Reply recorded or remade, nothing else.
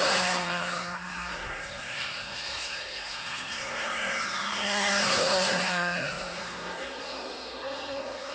remade